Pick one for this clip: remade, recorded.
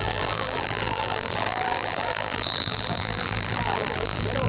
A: remade